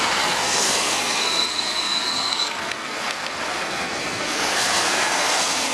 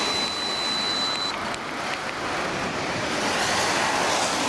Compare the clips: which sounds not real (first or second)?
first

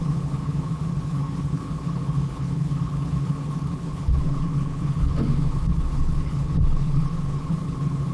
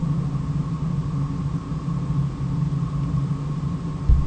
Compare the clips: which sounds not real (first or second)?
first